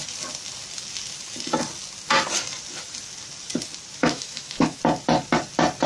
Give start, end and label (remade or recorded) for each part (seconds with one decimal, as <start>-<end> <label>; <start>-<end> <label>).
0.0-4.0 recorded; 4.0-4.8 remade; 4.8-5.9 recorded